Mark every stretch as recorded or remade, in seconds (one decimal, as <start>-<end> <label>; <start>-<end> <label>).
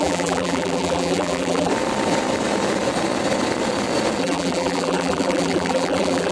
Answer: 0.0-1.7 remade; 1.7-4.2 recorded; 4.2-6.3 remade